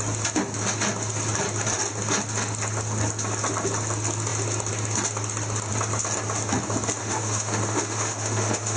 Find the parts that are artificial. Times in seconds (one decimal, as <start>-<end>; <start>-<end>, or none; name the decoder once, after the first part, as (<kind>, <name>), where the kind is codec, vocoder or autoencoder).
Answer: 7.0-8.8 (autoencoder, DAC-VAE)